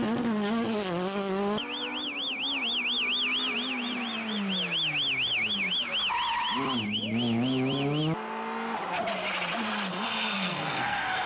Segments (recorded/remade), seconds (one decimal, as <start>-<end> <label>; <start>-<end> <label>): 0.0-9.9 recorded; 9.9-11.3 remade